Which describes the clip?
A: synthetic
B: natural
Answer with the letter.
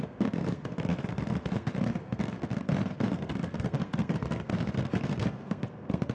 A